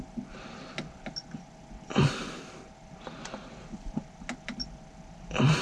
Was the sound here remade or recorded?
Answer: recorded